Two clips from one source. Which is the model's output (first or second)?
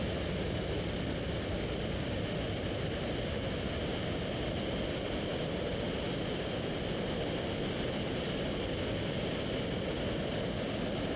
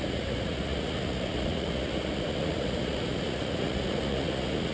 second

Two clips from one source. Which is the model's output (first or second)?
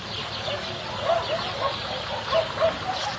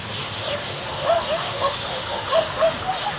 second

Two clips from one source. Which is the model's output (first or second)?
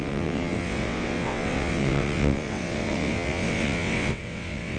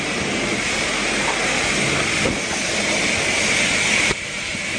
first